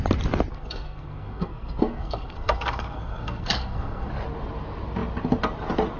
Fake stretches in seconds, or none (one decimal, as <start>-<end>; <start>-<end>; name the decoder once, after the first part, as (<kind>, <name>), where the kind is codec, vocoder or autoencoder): 0.5-4.1 (codec, SNAC)